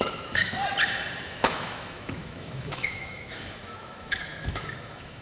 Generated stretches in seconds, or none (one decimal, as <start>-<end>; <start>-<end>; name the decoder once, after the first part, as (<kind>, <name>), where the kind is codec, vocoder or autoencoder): 0.0-0.6 (autoencoder, DAC-VAE); 1.3-5.2